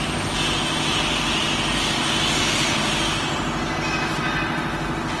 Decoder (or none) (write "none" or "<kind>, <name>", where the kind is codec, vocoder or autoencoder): none